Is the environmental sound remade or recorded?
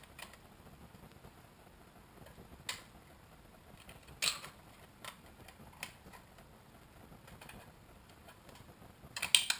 recorded